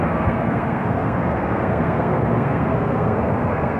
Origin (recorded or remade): remade